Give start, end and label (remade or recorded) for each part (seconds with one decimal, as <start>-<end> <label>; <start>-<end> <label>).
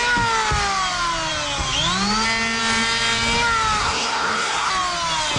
0.0-3.8 recorded; 3.8-4.7 remade; 4.7-5.4 recorded